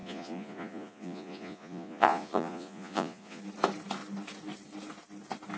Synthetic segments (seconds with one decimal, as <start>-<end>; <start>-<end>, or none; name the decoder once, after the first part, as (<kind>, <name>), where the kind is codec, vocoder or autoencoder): 0.0-3.4 (vocoder, Vocos)